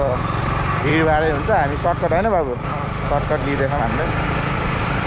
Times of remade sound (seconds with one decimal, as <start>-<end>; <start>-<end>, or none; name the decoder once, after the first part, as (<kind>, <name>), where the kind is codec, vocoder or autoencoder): 0.0-0.9 (vocoder, BigVGAN v2); 3.8-5.1